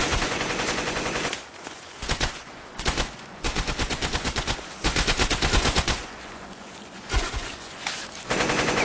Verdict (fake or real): fake